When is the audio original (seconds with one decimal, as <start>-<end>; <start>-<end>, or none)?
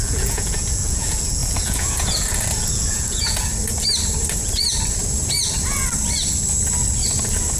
3.5-7.6